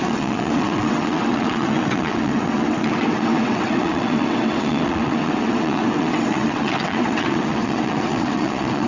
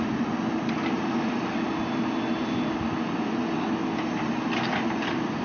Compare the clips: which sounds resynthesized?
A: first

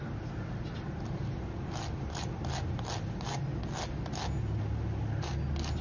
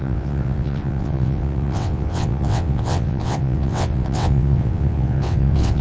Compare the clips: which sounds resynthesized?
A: second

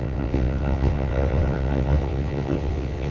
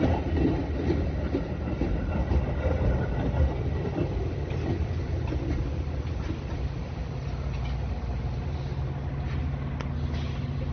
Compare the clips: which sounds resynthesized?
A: first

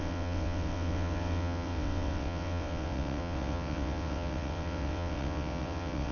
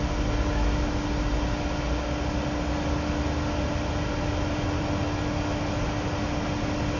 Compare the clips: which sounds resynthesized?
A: first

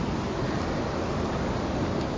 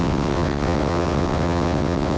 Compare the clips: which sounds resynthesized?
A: second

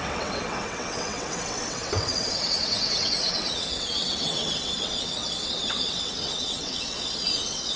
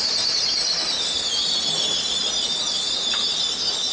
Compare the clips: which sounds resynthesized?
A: first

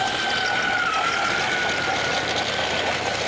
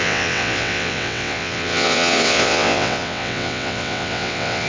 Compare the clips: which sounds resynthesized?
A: second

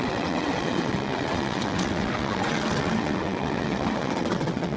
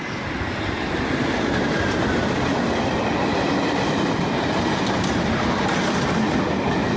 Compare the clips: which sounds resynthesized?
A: first